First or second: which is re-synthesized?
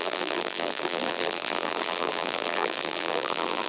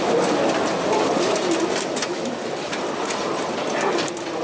first